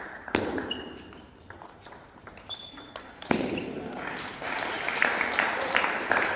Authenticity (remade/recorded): remade